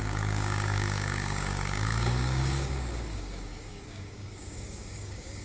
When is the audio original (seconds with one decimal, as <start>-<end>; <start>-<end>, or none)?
none